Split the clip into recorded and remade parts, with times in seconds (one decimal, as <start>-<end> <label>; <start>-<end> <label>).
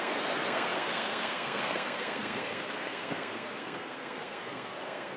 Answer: 0.0-5.2 remade